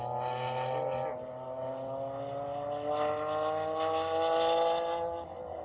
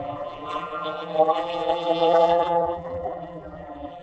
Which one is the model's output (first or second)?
second